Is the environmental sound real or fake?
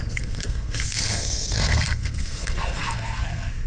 fake